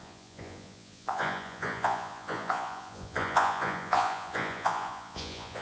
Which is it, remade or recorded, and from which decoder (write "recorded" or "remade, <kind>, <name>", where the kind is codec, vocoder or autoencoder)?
remade, vocoder, Vocos